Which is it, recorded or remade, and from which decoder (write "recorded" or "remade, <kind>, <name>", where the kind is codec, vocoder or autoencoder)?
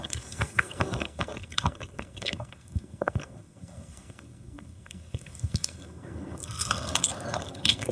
remade, codec, SNAC